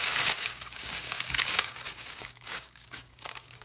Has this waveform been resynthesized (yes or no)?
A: yes